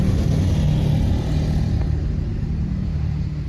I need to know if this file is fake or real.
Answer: real